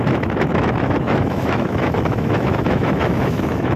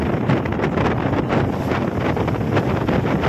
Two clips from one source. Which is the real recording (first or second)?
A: second